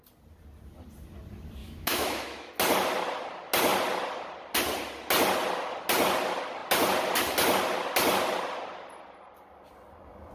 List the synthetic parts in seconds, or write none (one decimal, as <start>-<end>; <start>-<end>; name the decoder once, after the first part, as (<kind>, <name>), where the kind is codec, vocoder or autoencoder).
1.6-2.5 (autoencoder, DAC-VAE)

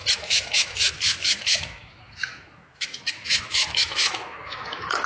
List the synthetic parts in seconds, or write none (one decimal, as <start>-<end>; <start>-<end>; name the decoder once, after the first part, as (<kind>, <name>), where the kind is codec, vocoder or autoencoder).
0.0-5.1 (autoencoder, DAC-VAE)